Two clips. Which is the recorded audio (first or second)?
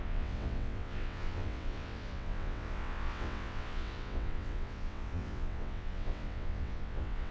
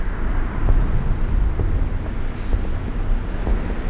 second